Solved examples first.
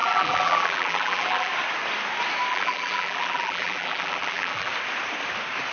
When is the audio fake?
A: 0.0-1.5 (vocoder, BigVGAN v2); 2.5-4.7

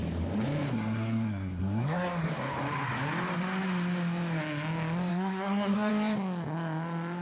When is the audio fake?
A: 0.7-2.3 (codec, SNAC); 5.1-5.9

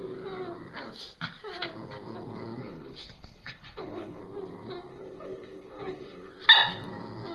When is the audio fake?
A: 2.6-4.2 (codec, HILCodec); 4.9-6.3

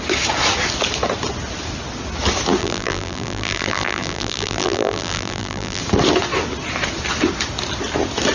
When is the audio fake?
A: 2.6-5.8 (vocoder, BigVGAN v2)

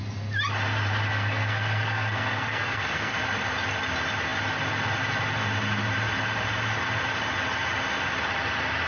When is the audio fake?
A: 1.1-3.2 (codec, SNAC)

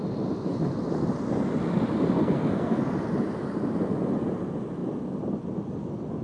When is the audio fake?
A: 2.2-2.8 (codec, SNAC)

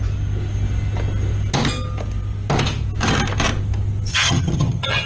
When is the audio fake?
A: 4.1-5.1 (vocoder, HiFi-GAN)